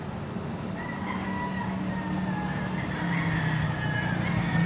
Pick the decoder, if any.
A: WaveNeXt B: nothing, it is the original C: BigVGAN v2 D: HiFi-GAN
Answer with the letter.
B